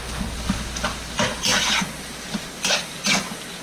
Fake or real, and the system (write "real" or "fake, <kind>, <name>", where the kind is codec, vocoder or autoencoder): real